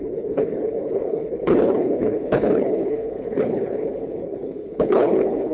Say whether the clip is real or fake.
fake